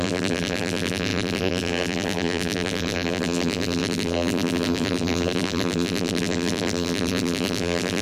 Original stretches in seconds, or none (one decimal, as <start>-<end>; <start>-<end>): none